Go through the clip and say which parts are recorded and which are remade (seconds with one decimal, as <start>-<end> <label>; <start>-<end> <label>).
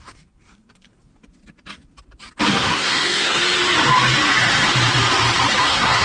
0.0-1.1 remade; 1.1-2.5 recorded; 2.5-3.4 remade; 3.4-5.6 recorded; 5.6-6.0 remade